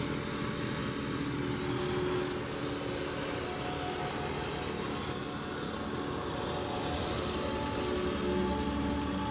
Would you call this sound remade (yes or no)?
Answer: no